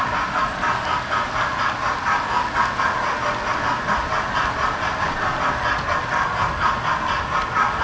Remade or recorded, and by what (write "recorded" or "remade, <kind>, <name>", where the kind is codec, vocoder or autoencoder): recorded